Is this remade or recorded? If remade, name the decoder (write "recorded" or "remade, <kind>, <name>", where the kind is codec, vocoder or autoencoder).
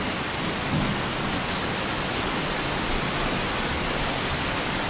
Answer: recorded